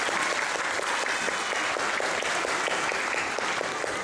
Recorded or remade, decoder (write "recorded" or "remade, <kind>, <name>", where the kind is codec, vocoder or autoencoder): recorded